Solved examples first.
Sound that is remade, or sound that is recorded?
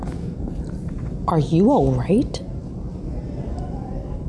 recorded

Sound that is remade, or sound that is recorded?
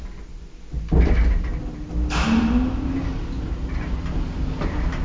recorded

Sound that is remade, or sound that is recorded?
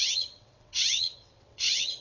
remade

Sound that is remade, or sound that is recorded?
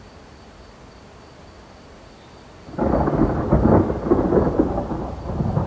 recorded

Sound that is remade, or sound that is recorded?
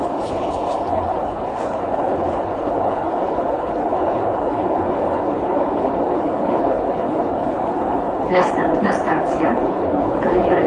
remade